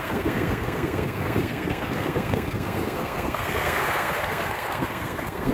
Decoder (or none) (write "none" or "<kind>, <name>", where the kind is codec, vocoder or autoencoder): codec, SNAC